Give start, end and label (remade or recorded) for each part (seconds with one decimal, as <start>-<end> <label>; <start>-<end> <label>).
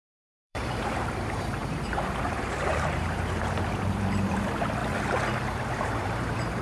0.0-4.8 remade; 4.8-5.8 recorded; 5.8-6.6 remade